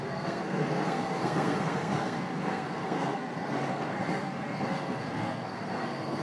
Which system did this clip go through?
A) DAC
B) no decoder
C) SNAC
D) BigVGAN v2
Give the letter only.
C